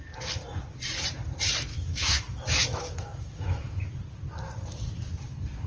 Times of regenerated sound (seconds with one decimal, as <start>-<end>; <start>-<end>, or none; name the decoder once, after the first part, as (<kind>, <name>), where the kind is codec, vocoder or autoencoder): 1.7-3.8 (autoencoder, DAC-VAE)